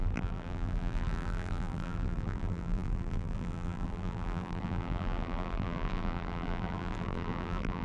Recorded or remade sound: remade